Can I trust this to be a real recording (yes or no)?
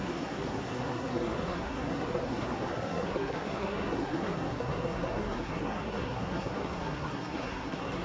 no